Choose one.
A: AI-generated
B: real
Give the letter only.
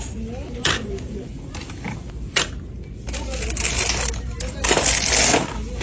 B